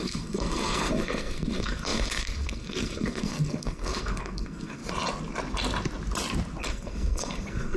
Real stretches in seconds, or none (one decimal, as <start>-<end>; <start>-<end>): 4.8-6.6